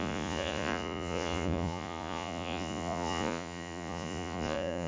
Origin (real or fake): fake